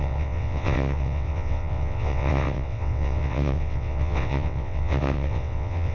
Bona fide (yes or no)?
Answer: no